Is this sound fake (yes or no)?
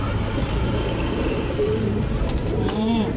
yes